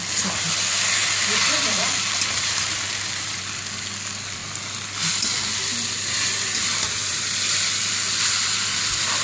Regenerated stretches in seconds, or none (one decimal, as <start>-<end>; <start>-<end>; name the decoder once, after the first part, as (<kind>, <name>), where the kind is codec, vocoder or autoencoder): 1.0-3.4 (vocoder, BigVGAN v2); 7.1-7.9